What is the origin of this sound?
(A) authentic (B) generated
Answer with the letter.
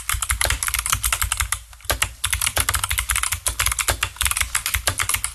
A